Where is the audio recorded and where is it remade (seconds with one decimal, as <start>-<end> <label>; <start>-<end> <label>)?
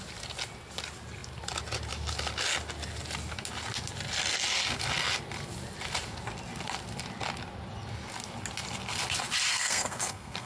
0.0-9.5 recorded; 9.5-10.5 remade